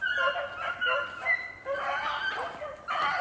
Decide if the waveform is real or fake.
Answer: real